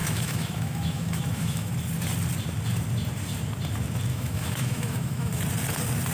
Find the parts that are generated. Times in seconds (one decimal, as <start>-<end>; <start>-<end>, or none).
0.0-1.7; 4.1-5.4